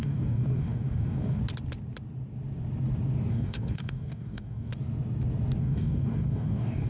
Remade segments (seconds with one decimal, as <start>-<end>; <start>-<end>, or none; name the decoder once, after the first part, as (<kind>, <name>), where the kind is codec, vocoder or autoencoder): 0.0-1.4 (codec, DAC); 3.3-4.7; 5.6-6.9